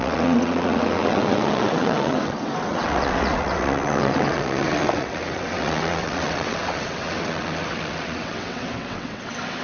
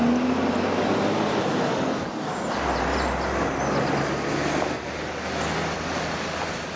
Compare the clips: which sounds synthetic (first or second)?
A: first